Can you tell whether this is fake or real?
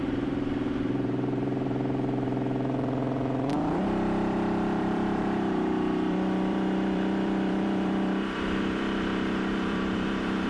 fake